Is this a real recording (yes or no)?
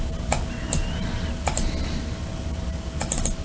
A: yes